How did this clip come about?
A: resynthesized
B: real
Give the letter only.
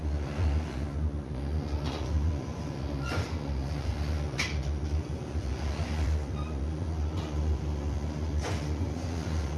A